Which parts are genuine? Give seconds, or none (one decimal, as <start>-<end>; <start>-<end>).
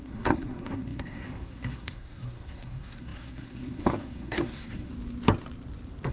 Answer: 4.9-6.1